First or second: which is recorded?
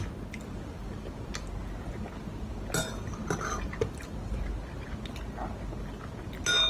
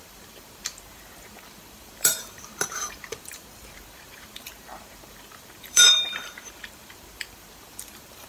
first